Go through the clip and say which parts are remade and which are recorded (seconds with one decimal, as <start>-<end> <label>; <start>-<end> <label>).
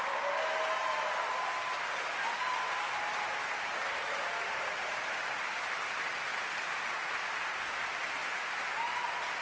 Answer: 0.0-6.3 remade; 6.3-7.7 recorded; 7.7-8.2 remade; 8.2-9.0 recorded; 9.0-9.4 remade